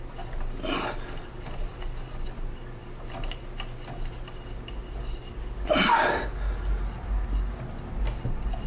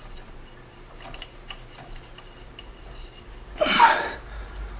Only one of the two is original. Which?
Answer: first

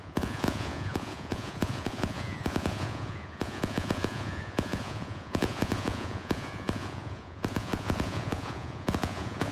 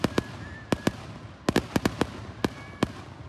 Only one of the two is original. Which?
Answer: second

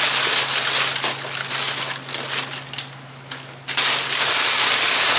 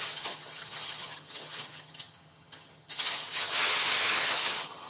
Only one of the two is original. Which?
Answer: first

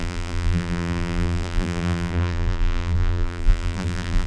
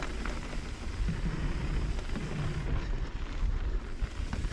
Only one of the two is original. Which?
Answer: second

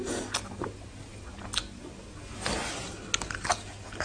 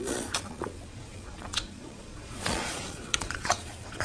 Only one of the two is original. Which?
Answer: first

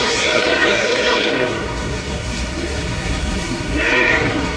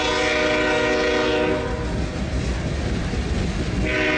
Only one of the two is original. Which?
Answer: second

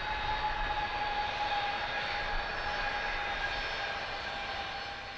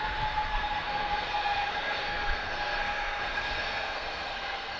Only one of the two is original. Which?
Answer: first